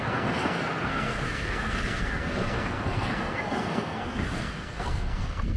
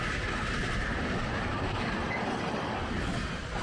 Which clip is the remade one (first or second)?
first